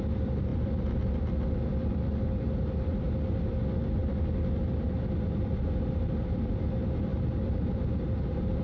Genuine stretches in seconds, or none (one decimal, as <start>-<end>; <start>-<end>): 0.0-0.5; 3.0-4.0; 6.5-7.1